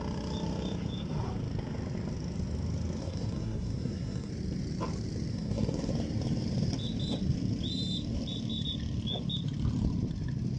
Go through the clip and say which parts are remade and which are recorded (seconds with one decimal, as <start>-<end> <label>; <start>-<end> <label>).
0.0-3.0 recorded; 3.0-4.3 remade; 4.3-5.3 recorded; 5.3-5.9 remade; 5.9-10.6 recorded